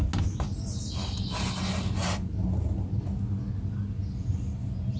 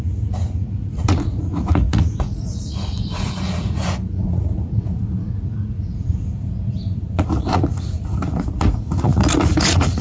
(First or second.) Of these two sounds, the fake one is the second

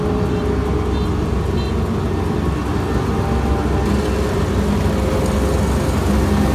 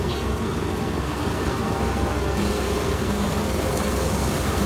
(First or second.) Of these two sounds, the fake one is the second